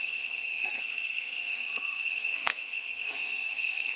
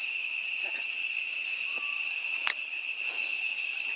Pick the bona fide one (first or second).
second